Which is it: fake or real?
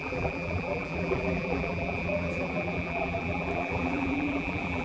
fake